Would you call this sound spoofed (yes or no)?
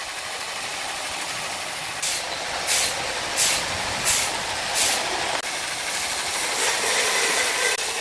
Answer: no